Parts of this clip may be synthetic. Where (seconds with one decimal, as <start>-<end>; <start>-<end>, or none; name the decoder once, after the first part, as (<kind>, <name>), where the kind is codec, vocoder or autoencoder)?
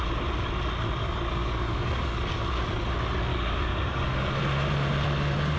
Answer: 1.0-2.4 (codec, DAC); 3.3-4.4